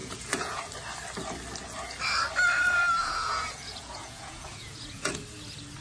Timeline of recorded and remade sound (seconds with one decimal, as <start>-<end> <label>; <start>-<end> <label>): 0.0-0.6 remade; 0.6-3.0 recorded; 3.0-5.2 remade; 5.2-5.8 recorded